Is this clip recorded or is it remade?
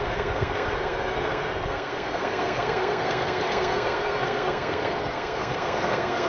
remade